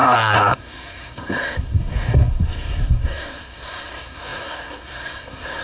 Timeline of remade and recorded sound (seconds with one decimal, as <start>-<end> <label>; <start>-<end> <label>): 0.0-5.6 remade